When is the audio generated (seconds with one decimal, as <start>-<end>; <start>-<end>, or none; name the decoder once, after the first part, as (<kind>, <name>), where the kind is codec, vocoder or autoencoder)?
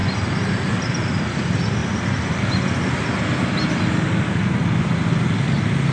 none